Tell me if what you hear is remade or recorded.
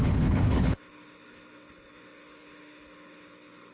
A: remade